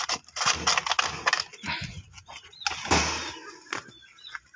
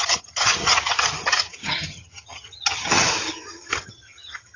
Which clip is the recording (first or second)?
first